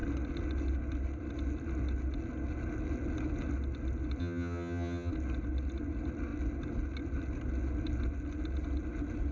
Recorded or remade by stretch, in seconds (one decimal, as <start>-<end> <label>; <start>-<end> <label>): 0.0-4.2 recorded; 4.2-5.1 remade; 5.1-9.3 recorded